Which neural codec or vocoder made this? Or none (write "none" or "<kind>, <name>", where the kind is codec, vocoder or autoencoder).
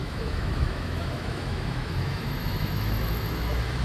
autoencoder, DAC-VAE